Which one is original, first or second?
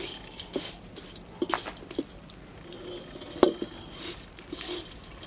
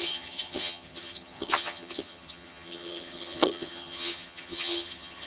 first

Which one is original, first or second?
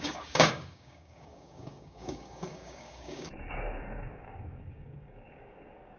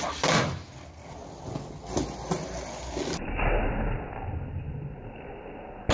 second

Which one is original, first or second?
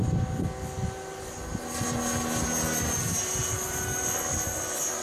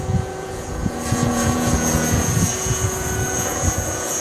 first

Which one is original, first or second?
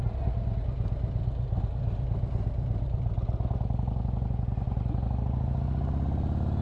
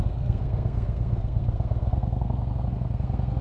first